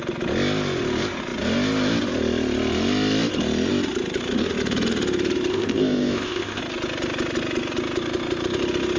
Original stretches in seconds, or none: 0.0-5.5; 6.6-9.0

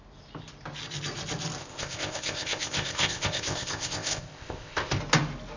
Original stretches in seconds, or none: 0.0-1.6; 5.0-5.6

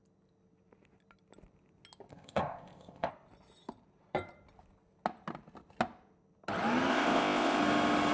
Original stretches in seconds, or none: 0.0-2.1; 3.1-6.9; 7.6-8.1

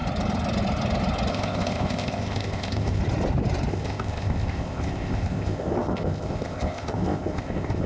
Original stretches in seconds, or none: 0.0-1.3; 3.0-3.7

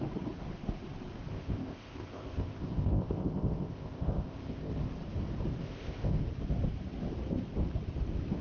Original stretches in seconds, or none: 0.0-1.3; 4.7-5.6; 6.2-8.4

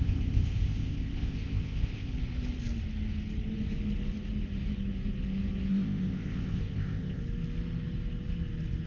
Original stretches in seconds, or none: 2.1-5.7; 7.2-8.9

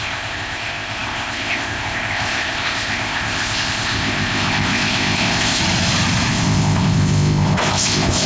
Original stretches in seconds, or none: 5.6-6.3

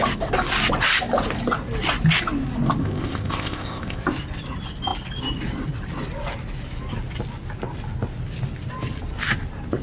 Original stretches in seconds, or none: 0.0-2.8; 4.0-9.8